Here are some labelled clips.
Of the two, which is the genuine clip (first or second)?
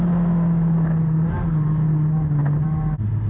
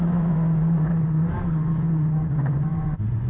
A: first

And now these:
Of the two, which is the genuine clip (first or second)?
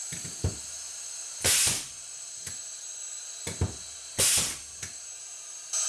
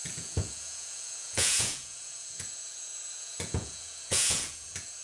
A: first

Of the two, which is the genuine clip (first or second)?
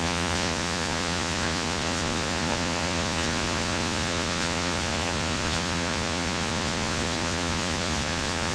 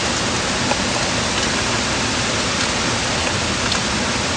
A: second